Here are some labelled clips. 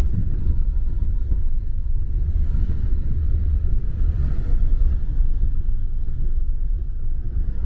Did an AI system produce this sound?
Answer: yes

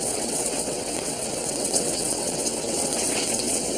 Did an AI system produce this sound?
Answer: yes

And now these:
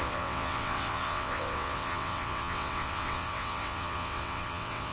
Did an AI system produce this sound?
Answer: yes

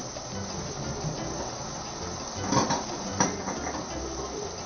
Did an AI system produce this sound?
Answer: no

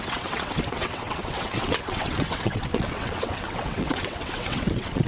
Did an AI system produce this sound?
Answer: yes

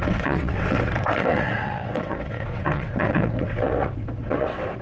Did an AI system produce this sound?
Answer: yes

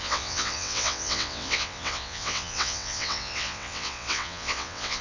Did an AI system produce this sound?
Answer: yes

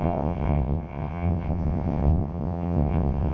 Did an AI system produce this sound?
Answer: yes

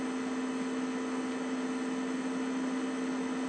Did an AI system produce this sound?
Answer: no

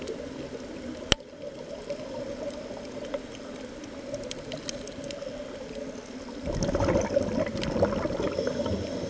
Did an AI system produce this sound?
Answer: no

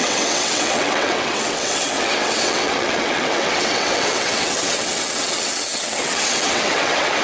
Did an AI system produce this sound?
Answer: yes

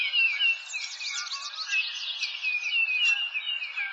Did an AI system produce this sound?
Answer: no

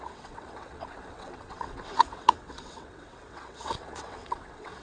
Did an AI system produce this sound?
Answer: yes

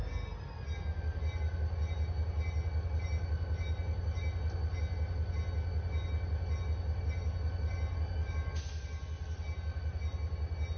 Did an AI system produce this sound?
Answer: no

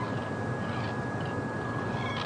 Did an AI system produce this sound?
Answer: no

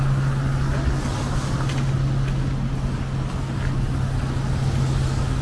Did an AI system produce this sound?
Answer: no